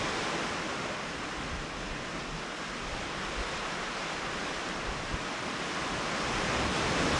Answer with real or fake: real